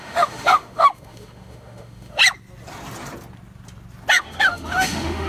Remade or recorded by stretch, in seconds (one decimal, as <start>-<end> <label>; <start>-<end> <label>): 0.0-2.2 remade; 2.2-4.1 recorded; 4.1-5.3 remade